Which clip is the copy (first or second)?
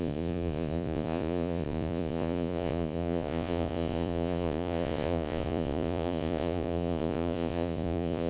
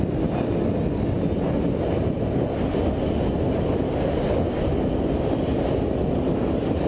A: first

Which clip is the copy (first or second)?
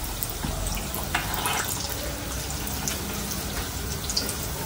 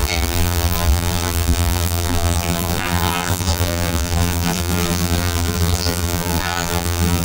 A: second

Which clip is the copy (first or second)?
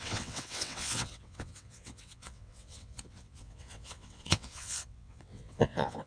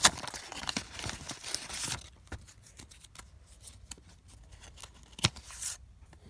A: first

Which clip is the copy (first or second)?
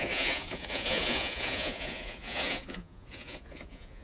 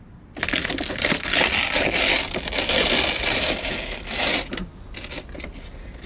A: first